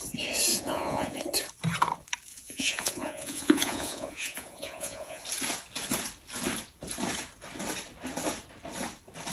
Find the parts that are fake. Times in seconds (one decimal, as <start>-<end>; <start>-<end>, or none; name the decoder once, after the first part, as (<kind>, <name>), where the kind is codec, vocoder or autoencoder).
0.5-1.2 (vocoder, Vocos); 2.3-5.2